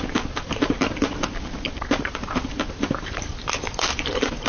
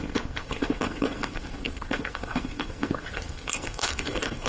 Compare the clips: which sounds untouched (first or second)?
first